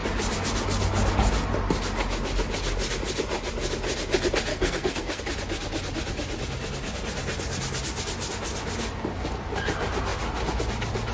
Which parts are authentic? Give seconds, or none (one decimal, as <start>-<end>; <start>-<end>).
0.0-4.5; 5.2-11.1